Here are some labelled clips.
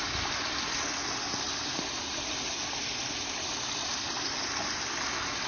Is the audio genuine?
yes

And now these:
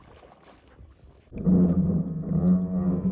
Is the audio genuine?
yes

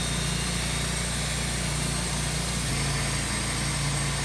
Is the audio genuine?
yes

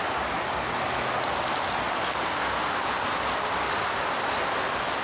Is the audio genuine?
yes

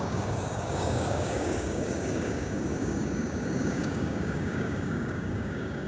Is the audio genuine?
no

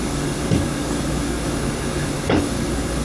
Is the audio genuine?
no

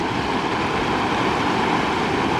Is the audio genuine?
yes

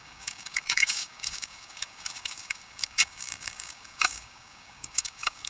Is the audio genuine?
no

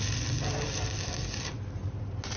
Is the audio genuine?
yes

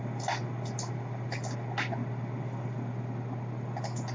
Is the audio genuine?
yes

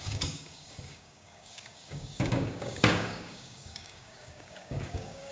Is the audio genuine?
no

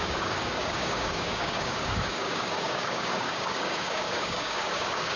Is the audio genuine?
no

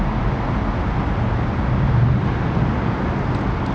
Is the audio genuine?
yes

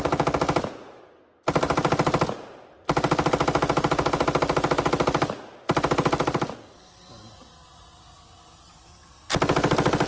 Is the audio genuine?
yes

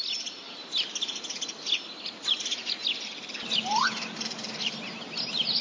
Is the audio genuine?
yes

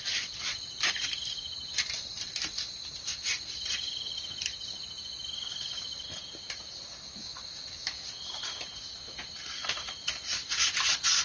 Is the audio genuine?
yes